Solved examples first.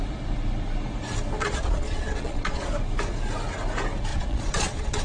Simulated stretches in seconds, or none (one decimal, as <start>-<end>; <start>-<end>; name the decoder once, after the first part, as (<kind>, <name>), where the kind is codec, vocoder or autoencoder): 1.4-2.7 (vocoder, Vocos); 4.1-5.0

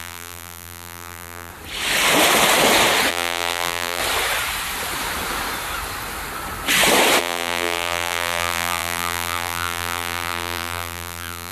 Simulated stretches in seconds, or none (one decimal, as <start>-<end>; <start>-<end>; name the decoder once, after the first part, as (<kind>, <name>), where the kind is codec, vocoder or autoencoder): 0.0-1.5 (vocoder, BigVGAN v2); 3.1-4.0; 7.2-11.5

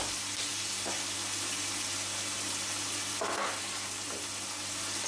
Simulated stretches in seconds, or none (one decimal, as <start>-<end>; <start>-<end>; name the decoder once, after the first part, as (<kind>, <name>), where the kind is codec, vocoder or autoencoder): none

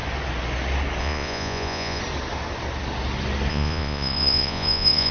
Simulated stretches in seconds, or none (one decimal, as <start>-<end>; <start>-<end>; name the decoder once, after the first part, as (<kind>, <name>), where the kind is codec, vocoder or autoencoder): 1.0-2.0 (vocoder, Vocos); 3.5-5.1

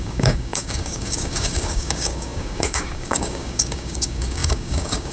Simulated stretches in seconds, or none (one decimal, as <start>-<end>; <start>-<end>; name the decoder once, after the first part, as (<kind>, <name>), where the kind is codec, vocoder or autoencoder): 0.0-5.1 (codec, DAC)

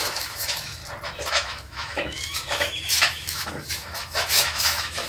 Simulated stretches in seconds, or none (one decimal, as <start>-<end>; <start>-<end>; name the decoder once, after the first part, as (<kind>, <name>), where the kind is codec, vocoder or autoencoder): 0.0-0.8 (autoencoder, DAC-VAE); 1.3-5.1